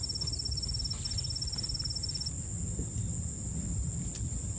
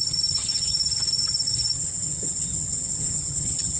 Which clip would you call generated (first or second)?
second